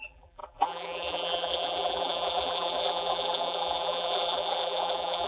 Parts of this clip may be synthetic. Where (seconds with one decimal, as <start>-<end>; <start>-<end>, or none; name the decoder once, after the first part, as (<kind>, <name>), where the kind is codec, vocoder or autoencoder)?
0.0-5.3 (vocoder, BigVGAN v2)